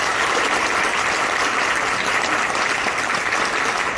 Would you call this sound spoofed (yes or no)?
no